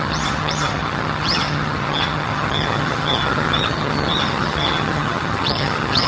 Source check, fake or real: fake